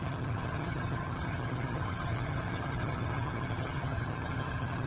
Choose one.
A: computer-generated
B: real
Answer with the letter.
A